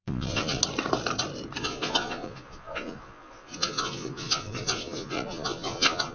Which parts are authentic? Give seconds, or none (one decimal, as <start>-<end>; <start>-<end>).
0.6-1.6